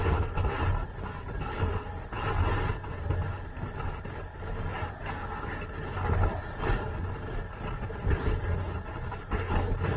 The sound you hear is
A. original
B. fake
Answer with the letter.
A